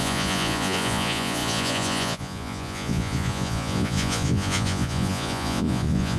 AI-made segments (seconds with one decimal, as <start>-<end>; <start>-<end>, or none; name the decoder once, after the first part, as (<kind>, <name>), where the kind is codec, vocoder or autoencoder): 0.0-6.2 (vocoder, Vocos)